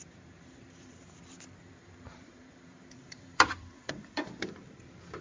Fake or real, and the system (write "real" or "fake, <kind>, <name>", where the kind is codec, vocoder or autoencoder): fake, vocoder, BigVGAN v2